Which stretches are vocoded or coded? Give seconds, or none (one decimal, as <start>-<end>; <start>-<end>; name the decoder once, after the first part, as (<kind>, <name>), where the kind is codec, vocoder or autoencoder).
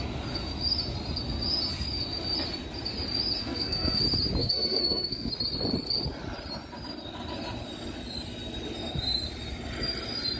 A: 3.4-4.0 (codec, SNAC); 4.4-5.3